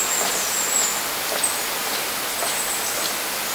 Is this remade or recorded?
recorded